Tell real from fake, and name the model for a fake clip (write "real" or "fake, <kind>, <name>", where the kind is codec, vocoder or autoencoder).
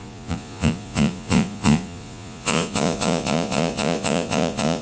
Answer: fake, vocoder, Vocos